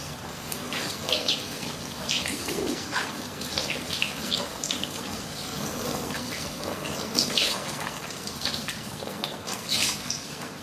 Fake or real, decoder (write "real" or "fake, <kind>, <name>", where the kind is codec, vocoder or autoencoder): fake, codec, SNAC